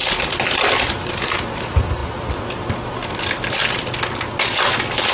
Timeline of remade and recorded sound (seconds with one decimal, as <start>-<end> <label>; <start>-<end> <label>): 0.0-0.9 recorded; 0.9-2.0 remade; 2.0-5.1 recorded